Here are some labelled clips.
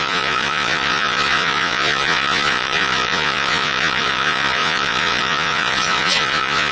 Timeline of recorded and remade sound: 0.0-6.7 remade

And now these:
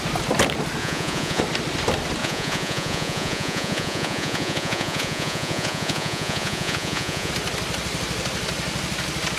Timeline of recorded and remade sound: 0.0-0.8 recorded; 0.8-1.4 remade; 1.4-2.2 recorded; 2.2-7.3 remade; 7.3-9.4 recorded

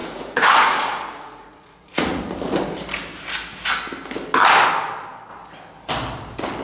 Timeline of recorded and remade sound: 0.0-2.2 remade; 2.2-6.6 recorded